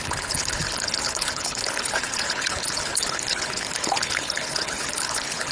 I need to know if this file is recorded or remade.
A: remade